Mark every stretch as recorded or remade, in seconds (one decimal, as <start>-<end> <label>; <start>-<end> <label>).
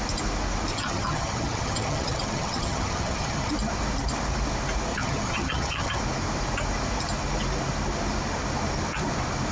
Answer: 0.0-0.7 recorded; 0.7-3.5 remade; 3.5-4.9 recorded; 4.9-6.0 remade; 6.0-9.5 recorded